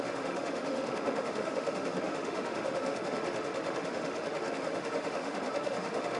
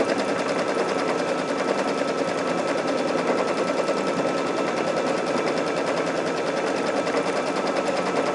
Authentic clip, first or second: second